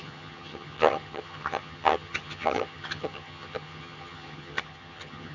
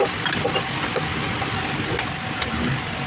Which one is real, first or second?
second